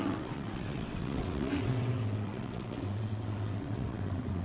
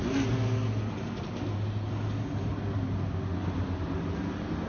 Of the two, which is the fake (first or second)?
first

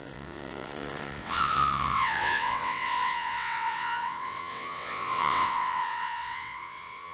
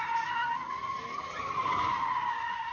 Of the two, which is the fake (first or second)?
first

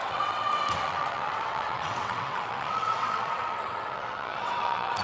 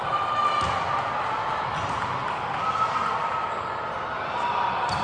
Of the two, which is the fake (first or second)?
first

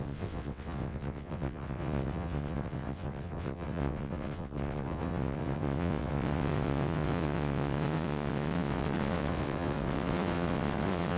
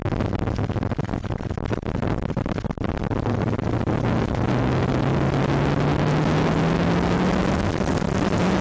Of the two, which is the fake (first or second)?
first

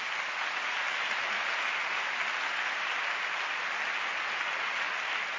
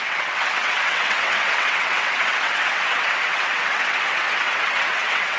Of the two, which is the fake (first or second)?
second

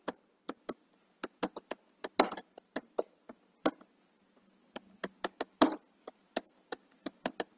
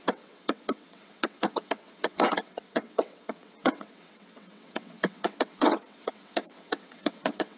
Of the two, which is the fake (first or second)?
second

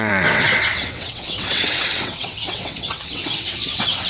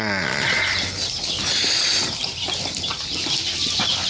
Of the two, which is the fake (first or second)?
first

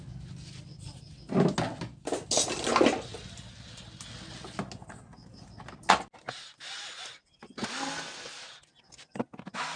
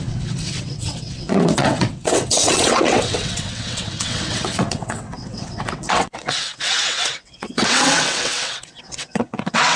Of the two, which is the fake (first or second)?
second